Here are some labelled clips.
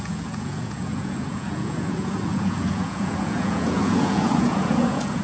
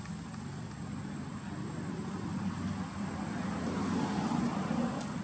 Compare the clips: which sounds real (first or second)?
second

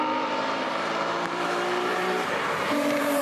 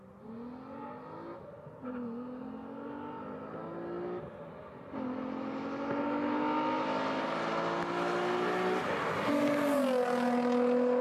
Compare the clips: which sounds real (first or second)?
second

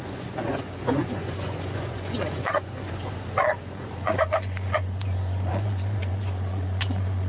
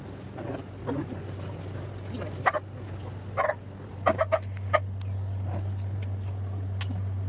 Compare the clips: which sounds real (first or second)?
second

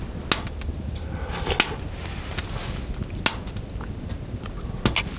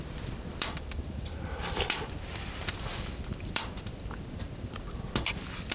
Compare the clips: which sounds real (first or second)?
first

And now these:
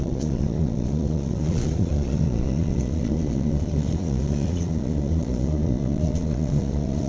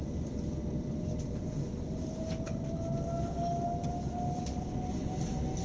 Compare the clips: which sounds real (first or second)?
second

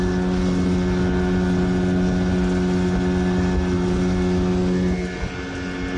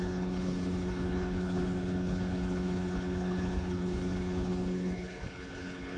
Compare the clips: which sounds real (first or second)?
first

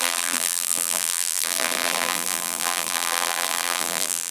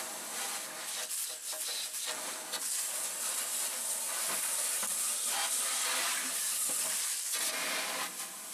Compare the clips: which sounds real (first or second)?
second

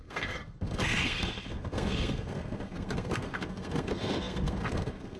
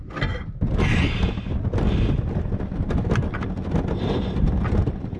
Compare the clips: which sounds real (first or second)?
second